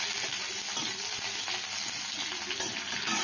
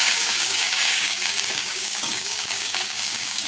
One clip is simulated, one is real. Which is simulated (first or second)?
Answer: second